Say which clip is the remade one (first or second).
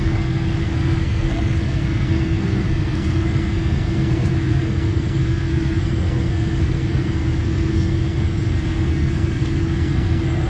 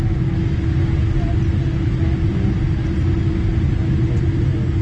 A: first